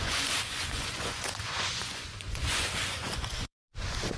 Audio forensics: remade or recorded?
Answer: remade